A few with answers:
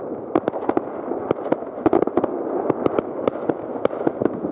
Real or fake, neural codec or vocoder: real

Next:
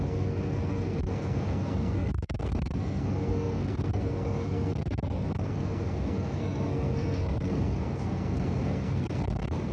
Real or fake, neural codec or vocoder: fake, codec, SNAC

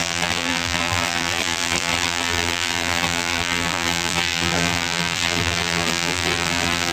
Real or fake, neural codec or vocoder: fake, vocoder, BigVGAN v2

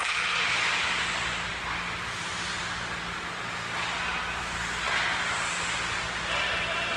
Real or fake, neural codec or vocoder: real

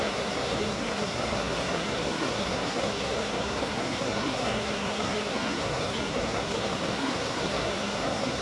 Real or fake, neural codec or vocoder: fake, codec, SNAC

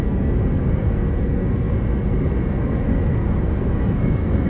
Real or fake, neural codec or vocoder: fake, codec, SNAC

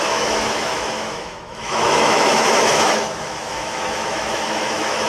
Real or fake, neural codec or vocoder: fake, autoencoder, DAC-VAE